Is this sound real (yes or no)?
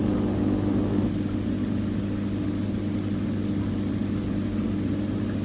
yes